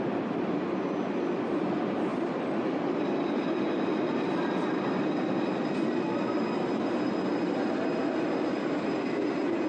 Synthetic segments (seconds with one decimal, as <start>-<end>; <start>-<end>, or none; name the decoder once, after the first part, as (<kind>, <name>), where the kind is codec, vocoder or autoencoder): 2.1-3.2 (vocoder, BigVGAN v2); 4.1-5.7